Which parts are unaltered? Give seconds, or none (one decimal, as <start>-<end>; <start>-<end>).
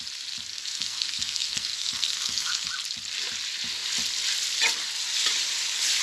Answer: 0.0-0.5; 2.7-6.0